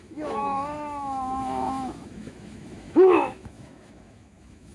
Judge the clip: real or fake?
fake